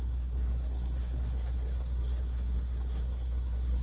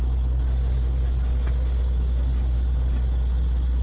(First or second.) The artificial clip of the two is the first